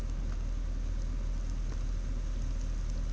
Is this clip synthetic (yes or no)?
no